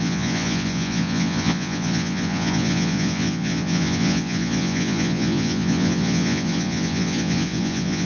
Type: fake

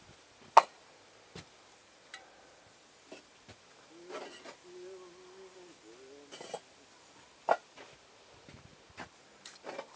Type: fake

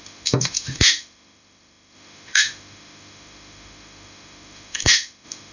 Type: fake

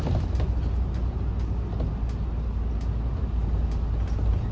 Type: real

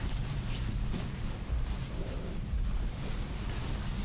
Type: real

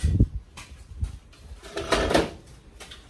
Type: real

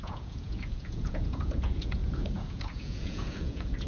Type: fake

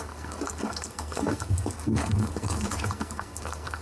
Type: fake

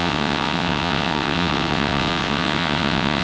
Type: fake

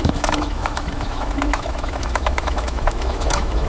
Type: fake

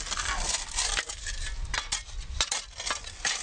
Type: real